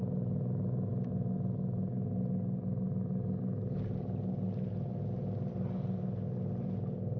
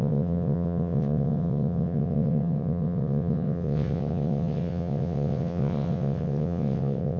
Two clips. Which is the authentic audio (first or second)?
first